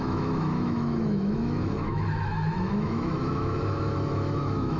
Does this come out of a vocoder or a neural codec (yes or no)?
yes